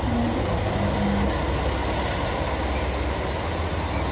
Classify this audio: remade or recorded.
recorded